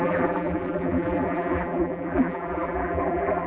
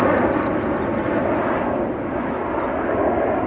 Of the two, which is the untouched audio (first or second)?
second